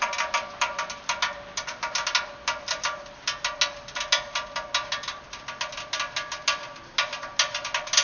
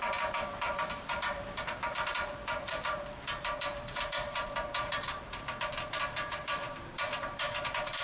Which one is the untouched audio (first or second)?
first